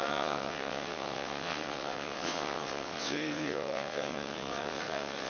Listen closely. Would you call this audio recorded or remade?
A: remade